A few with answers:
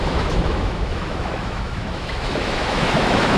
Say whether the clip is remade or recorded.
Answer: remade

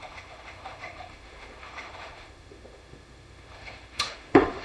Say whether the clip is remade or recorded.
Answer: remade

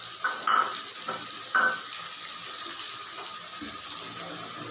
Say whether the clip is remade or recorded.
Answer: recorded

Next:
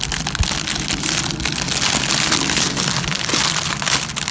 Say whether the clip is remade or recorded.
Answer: recorded